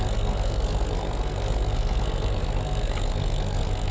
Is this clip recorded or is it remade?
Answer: remade